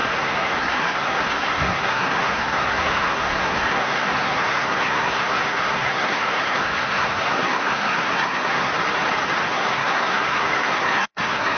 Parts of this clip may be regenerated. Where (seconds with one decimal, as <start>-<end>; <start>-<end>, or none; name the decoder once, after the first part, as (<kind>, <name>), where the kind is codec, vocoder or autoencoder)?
0.0-8.7 (codec, SNAC); 9.5-11.6